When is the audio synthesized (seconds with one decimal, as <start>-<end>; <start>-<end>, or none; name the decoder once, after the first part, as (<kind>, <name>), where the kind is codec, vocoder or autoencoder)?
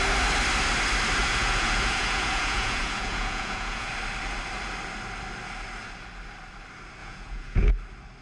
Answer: 1.2-3.9 (vocoder, Vocos); 7.0-7.7